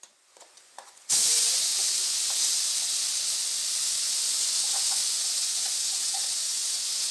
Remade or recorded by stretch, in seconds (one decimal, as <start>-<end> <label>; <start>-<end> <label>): 0.0-1.7 remade; 1.7-4.0 recorded; 4.0-7.1 remade